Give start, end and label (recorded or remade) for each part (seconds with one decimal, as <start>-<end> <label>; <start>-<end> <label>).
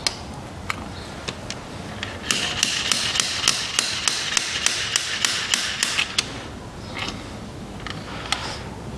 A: 0.0-9.0 recorded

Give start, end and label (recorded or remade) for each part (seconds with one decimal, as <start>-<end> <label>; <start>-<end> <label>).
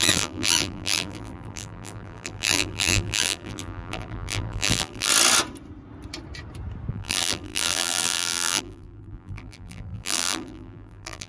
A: 0.0-5.1 remade; 5.1-6.9 recorded; 6.9-11.3 remade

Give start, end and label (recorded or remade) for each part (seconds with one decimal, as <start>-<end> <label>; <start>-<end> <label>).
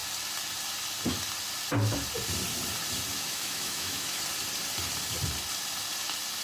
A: 0.0-3.1 recorded; 3.1-4.2 remade; 4.2-6.4 recorded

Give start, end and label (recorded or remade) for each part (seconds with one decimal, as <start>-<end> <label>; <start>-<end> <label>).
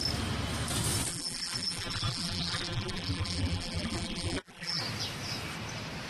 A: 0.0-1.1 recorded; 1.1-4.8 remade; 4.8-6.1 recorded